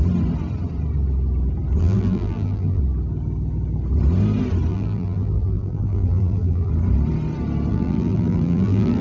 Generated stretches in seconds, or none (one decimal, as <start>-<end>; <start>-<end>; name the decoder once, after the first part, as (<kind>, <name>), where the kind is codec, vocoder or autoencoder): 1.8-2.8 (vocoder, BigVGAN v2); 4.7-6.7; 7.7-9.0